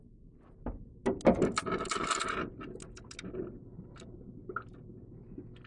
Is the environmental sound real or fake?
real